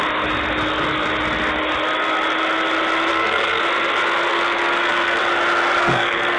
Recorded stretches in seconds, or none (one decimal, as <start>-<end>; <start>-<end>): 0.0-3.1; 3.6-4.3; 5.2-5.8

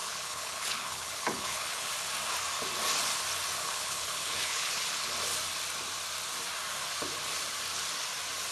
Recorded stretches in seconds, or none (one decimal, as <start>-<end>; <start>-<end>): 1.9-3.6; 5.1-8.5

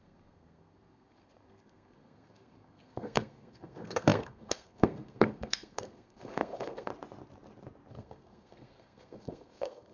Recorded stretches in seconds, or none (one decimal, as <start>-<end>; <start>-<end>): 6.9-7.9

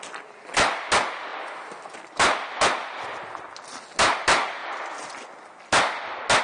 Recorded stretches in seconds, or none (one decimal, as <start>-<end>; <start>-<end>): 0.0-6.4